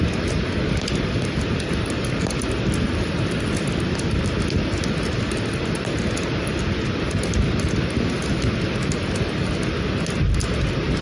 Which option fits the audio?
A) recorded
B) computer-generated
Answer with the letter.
A